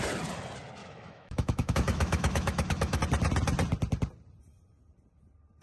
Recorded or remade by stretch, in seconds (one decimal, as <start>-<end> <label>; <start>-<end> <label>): 0.0-0.8 recorded; 0.8-3.0 remade; 3.0-5.6 recorded